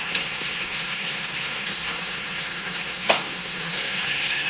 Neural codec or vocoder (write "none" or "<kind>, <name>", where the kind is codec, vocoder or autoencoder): codec, SNAC